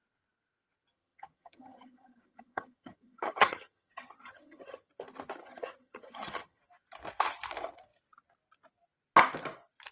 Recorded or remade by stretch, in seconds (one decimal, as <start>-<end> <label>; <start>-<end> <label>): 0.0-0.9 recorded; 0.9-4.9 remade; 4.9-5.4 recorded; 5.4-6.6 remade; 6.6-9.9 recorded